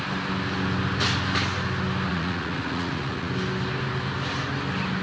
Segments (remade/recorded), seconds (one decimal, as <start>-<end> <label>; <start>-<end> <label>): 0.0-2.1 recorded; 2.1-3.3 remade; 3.3-5.0 recorded

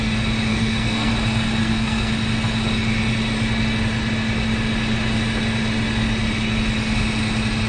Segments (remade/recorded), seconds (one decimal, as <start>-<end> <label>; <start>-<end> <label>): 0.0-0.5 recorded; 0.5-1.1 remade; 1.1-1.6 recorded; 1.6-2.1 remade; 2.1-7.7 recorded

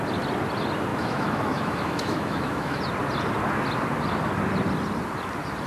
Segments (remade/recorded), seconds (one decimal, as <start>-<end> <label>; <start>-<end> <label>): 0.0-0.9 recorded; 0.9-2.8 remade; 2.8-5.7 recorded

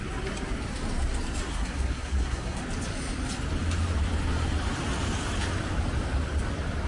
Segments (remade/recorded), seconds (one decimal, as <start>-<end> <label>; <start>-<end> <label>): 0.0-1.5 recorded; 1.5-2.6 remade; 2.6-6.9 recorded

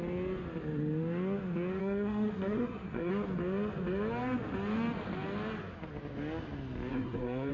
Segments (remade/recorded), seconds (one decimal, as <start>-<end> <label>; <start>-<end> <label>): 0.0-1.8 recorded; 1.8-3.1 remade; 3.1-6.9 recorded; 6.9-7.5 remade

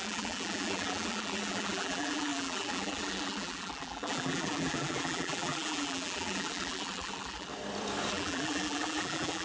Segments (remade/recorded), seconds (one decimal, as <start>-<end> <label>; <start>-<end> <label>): 0.0-7.5 remade; 7.5-8.1 recorded; 8.1-9.4 remade